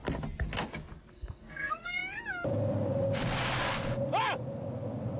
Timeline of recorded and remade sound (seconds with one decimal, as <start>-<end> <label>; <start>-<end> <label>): 0.0-1.1 recorded; 1.1-2.0 remade; 2.0-5.2 recorded